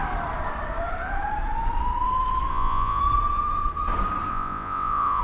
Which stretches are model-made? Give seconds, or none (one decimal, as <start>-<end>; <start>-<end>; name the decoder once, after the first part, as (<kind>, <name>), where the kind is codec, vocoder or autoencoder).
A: 2.5-3.0 (vocoder, Vocos); 4.3-5.2

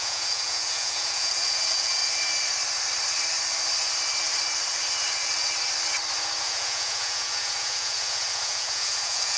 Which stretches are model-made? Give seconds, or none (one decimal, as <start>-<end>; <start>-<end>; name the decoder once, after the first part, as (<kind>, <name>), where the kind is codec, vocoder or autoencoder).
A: 0.0-2.0 (vocoder, Vocos); 6.4-9.4

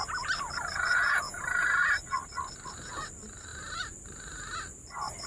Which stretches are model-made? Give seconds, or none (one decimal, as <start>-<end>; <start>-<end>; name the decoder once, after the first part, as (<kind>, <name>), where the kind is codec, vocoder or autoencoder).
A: 0.9-1.4 (vocoder, Vocos)